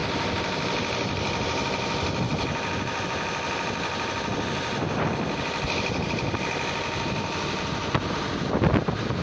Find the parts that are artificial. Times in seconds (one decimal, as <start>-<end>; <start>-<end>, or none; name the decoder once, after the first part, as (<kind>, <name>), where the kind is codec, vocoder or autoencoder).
none